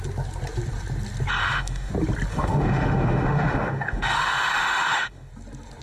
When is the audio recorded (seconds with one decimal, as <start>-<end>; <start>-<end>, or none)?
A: 0.0-1.4; 1.9-2.3; 5.3-5.8